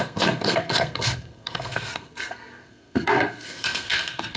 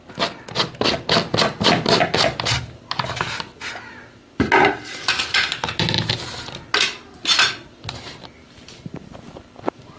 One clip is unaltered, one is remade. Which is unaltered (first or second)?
second